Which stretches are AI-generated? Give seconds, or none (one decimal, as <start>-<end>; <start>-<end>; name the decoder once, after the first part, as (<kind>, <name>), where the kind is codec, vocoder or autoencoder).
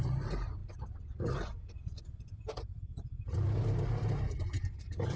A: 0.0-5.2 (vocoder, BigVGAN v2)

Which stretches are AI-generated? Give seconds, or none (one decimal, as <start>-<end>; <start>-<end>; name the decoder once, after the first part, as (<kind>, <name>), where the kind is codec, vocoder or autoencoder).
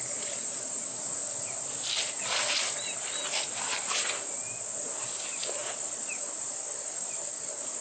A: 5.6-7.8 (vocoder, BigVGAN v2)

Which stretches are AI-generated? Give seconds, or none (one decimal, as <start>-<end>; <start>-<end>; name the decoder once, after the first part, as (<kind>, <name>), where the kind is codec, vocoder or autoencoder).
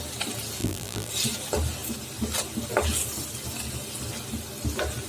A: 0.6-1.1 (vocoder, BigVGAN v2)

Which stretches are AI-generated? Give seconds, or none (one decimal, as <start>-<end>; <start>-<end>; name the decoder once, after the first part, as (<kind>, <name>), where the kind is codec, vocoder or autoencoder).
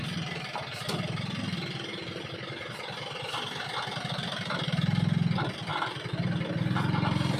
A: none